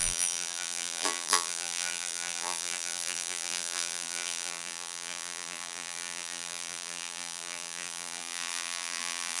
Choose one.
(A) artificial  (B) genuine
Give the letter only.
A